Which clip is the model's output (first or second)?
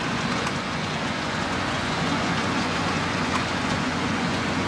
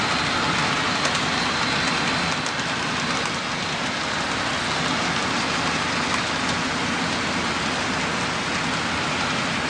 first